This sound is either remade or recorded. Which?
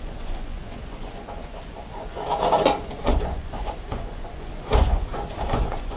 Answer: remade